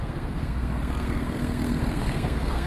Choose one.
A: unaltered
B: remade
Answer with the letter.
B